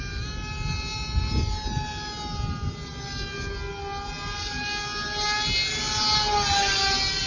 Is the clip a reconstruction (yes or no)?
no